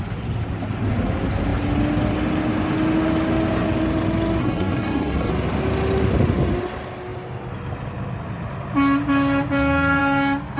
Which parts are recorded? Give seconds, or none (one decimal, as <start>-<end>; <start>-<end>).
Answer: 0.0-4.4; 5.3-10.6